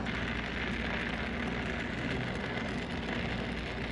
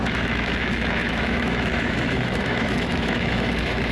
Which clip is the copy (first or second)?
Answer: second